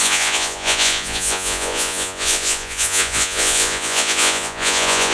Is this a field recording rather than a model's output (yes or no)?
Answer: no